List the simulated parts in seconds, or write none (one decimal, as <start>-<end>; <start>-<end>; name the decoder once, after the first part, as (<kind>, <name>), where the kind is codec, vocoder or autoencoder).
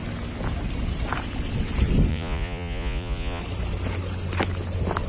2.1-3.4 (vocoder, Vocos)